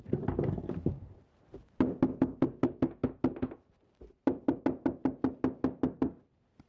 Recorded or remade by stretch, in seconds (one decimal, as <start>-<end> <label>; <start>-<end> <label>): 0.0-0.9 recorded; 0.9-2.2 remade; 2.2-3.0 recorded; 3.0-4.6 remade; 4.6-6.7 recorded